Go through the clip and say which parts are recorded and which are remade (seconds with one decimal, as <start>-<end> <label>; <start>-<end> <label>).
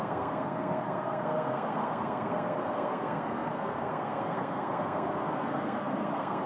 0.0-6.5 remade